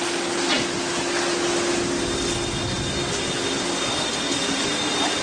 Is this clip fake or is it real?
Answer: real